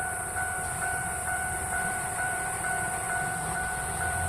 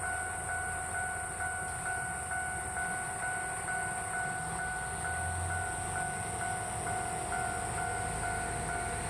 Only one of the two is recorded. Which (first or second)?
second